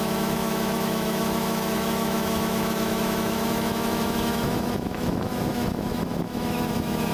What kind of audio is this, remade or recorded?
remade